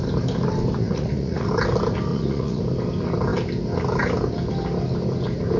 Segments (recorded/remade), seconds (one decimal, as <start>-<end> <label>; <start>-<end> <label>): 0.0-0.8 recorded; 0.8-1.5 remade; 1.5-2.1 recorded; 2.1-2.6 remade; 2.6-5.6 recorded